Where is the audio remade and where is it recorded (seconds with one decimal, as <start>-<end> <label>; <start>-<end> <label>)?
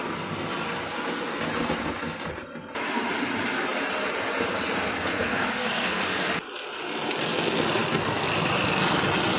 0.0-5.1 recorded; 5.1-6.0 remade; 6.0-9.4 recorded